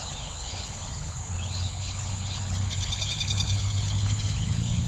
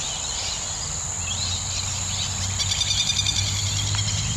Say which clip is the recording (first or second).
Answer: second